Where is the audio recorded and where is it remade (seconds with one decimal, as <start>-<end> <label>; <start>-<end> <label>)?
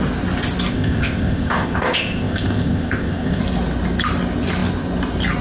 0.0-0.7 recorded; 0.7-3.4 remade; 3.4-5.4 recorded